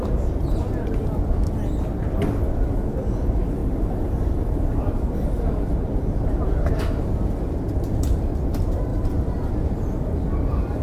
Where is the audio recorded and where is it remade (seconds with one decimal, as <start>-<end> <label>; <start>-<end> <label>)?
0.0-3.6 recorded; 3.6-7.0 remade; 7.0-8.9 recorded; 8.9-9.5 remade; 9.5-10.8 recorded